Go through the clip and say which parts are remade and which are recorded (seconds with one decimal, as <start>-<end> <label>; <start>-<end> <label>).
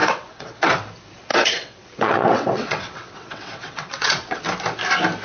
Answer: 0.0-0.7 remade; 0.7-1.3 recorded; 1.3-4.4 remade; 4.4-5.2 recorded